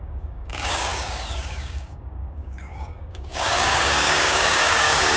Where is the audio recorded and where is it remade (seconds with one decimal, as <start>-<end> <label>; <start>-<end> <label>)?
0.0-5.2 remade